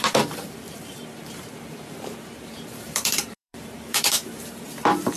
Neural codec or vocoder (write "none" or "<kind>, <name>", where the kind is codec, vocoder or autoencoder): vocoder, BigVGAN v2